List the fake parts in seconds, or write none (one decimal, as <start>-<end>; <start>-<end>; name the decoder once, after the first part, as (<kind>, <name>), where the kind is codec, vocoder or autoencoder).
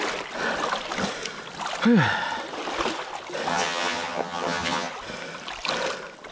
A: 3.5-4.9 (vocoder, HiFi-GAN)